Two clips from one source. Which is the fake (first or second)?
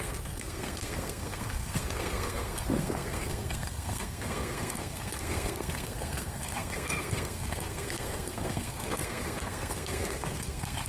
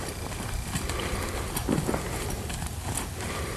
first